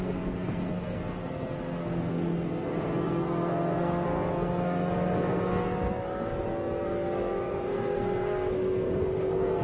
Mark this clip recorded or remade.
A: remade